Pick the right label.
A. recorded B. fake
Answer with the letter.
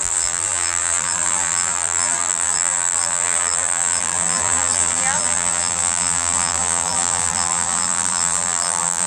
B